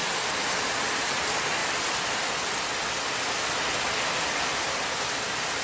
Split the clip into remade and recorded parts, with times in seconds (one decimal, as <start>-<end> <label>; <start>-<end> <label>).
0.0-5.6 recorded